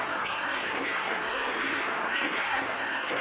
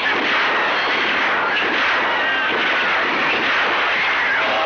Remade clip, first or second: first